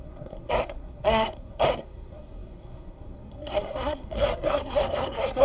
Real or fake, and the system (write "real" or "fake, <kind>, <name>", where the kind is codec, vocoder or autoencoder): fake, codec, SNAC